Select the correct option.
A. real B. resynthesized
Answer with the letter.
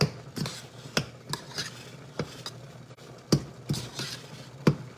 A